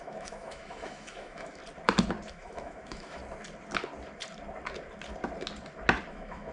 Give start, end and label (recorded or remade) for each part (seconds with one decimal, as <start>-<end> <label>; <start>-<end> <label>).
0.0-1.6 remade; 1.6-2.3 recorded; 2.3-3.2 remade; 3.2-6.1 recorded; 6.1-6.5 remade